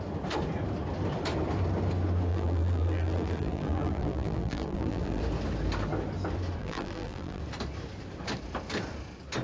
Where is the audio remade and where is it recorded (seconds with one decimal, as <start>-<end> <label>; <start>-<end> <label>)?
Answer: 0.0-2.3 recorded; 2.3-5.2 remade; 5.2-6.6 recorded; 6.6-7.4 remade; 7.4-9.4 recorded